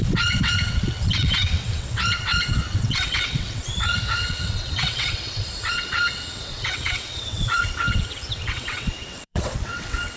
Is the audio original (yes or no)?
no